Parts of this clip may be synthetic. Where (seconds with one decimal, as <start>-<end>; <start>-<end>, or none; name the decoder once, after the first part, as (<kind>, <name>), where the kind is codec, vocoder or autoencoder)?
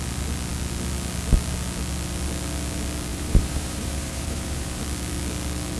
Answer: 3.1-4.8 (vocoder, BigVGAN v2)